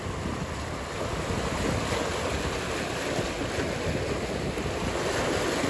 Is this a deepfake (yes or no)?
no